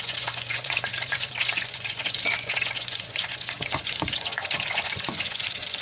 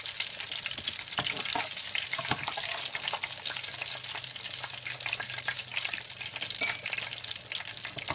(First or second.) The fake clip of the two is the first